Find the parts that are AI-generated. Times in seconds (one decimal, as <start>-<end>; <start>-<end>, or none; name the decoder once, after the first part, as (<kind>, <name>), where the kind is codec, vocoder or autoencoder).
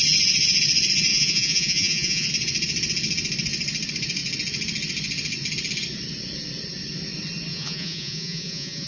1.1-2.3 (vocoder, Vocos); 7.5-8.9